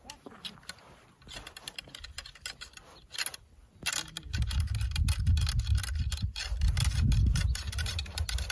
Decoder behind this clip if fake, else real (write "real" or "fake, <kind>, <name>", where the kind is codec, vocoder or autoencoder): real